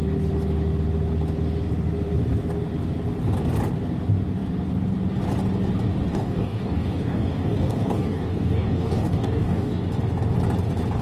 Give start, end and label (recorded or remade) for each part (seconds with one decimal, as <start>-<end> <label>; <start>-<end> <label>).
0.0-6.1 recorded; 6.1-9.8 remade; 9.8-11.0 recorded